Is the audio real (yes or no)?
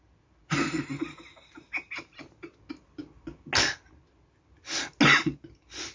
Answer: yes